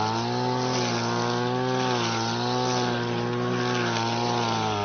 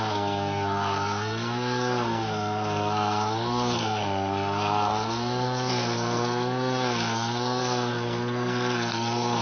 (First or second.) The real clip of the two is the first